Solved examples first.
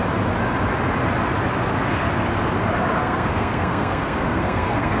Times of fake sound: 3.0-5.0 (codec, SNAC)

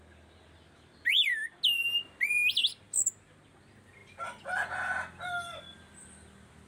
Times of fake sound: none

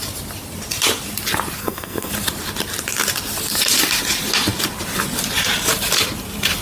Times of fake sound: 1.6-2.1 (codec, SNAC)

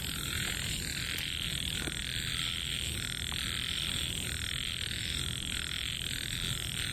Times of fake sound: none